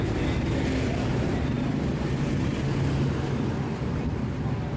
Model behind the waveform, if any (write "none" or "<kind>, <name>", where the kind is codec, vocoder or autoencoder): none